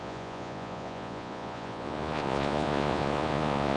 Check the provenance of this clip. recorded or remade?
remade